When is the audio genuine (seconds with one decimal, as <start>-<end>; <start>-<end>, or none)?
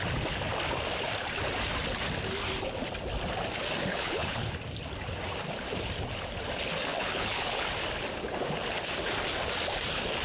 0.0-3.9; 4.5-6.9; 7.6-10.2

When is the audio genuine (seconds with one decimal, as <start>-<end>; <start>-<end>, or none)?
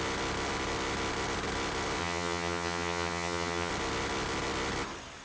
0.0-2.0; 3.7-5.2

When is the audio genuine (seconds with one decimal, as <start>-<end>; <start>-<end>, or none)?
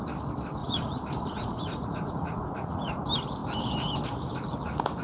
0.0-0.6; 3.0-5.0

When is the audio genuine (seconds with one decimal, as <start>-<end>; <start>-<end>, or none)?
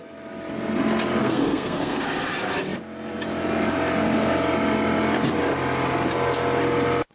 0.0-1.2; 2.0-7.1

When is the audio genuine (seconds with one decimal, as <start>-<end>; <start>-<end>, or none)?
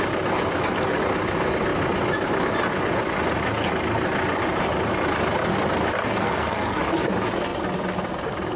0.0-6.0; 6.8-8.6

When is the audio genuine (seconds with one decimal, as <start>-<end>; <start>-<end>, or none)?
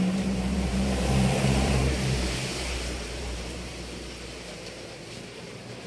3.7-4.5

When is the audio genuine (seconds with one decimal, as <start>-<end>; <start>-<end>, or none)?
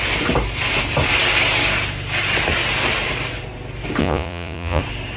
0.0-4.0; 4.8-5.2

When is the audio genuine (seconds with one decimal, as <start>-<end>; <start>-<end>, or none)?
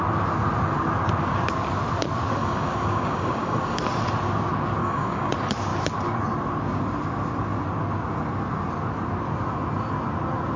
0.0-2.4; 3.8-4.8; 5.3-10.6